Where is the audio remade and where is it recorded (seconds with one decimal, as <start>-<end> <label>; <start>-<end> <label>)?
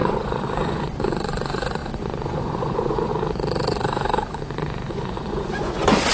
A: 0.0-3.1 remade; 3.1-4.9 recorded; 4.9-6.1 remade